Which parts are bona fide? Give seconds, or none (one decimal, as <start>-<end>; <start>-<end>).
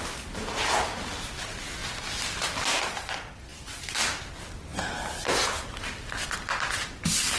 0.0-7.4